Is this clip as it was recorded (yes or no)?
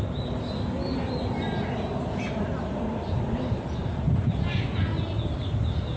yes